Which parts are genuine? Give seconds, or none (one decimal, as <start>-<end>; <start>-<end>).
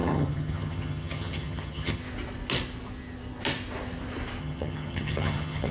2.0-4.4